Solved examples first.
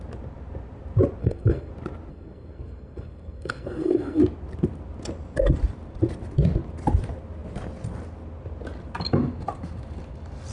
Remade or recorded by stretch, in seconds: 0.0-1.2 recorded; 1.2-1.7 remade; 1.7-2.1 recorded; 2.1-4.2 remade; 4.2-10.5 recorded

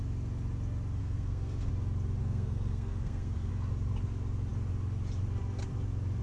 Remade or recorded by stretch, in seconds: 0.0-1.0 recorded; 1.0-1.7 remade; 1.7-2.2 recorded; 2.2-3.5 remade; 3.5-6.2 recorded

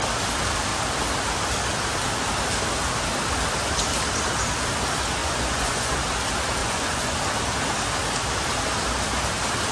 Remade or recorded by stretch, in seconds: 0.0-5.2 recorded; 5.2-6.0 remade; 6.0-6.6 recorded; 6.6-7.2 remade; 7.2-9.7 recorded

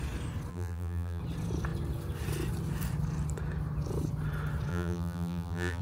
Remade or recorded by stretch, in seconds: 0.0-0.5 recorded; 0.5-1.2 remade; 1.2-4.7 recorded; 4.7-5.8 remade

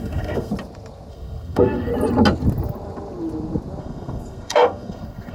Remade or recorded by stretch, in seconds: 0.0-0.5 remade; 0.5-1.1 recorded; 1.1-1.9 remade; 1.9-3.8 recorded; 3.8-5.3 remade